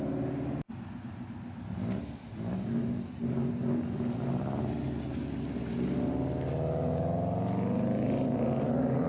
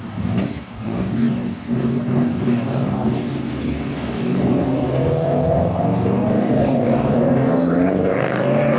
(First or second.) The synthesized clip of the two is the second